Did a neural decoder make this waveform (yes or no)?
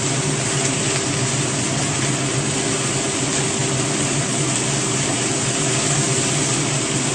no